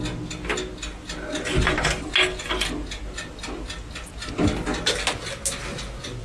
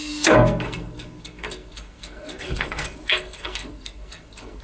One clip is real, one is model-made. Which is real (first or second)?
first